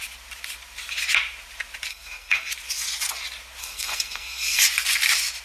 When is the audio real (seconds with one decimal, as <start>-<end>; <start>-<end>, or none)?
0.0-1.9; 2.5-3.6; 4.6-5.4